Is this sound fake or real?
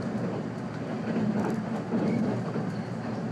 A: real